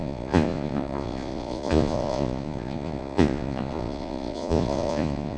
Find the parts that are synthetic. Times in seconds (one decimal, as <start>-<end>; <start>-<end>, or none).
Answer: 0.0-5.4